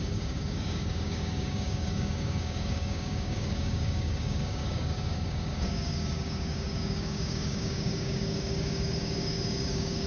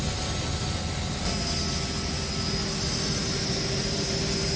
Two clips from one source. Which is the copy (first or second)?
first